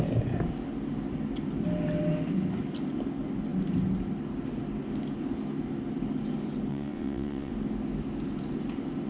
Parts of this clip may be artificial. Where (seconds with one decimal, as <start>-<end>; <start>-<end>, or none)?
6.7-7.5